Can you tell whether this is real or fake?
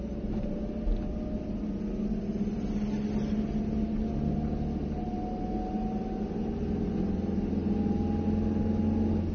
real